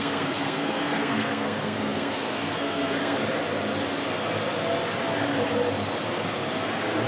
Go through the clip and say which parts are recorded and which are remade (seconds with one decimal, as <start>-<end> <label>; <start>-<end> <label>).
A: 0.0-3.2 remade; 3.2-7.1 recorded